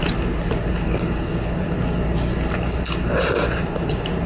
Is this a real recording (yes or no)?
yes